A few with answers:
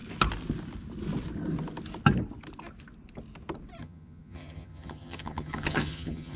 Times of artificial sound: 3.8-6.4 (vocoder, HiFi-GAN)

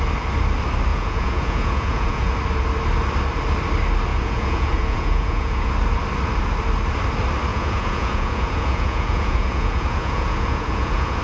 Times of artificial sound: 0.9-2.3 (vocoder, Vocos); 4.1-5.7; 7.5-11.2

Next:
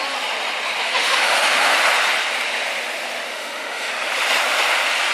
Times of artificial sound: 0.8-1.7 (autoencoder, DAC-VAE); 3.3-3.9

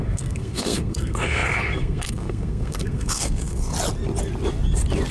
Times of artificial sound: 0.0-3.7 (codec, SNAC)

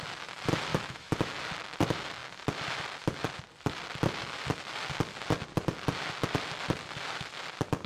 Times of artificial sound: 0.7-1.4 (autoencoder, DAC-VAE)